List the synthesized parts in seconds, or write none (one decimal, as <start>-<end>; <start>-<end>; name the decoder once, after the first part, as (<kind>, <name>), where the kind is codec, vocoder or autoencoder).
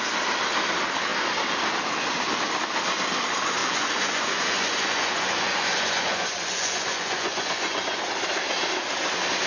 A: 3.6-8.0 (vocoder, Vocos)